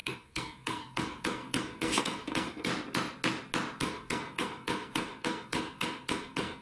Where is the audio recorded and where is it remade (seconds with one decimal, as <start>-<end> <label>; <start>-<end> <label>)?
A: 0.0-2.7 remade; 2.7-3.8 recorded; 3.8-6.6 remade